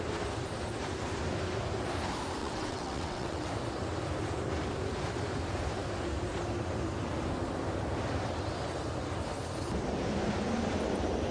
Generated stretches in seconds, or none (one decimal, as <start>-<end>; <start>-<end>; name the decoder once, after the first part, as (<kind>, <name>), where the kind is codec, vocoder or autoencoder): 2.4-3.5 (vocoder, WaveNeXt)